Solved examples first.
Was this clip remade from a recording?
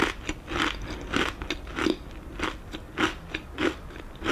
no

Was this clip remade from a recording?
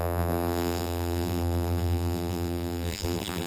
yes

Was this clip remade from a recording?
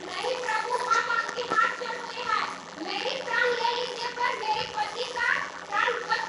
yes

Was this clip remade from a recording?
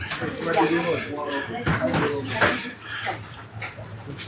yes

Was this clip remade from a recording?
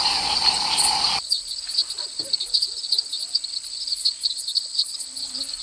no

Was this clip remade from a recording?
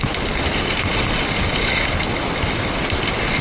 yes